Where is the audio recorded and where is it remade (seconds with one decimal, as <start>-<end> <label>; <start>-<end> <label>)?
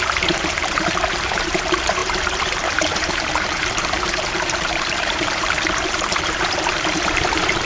0.0-7.6 remade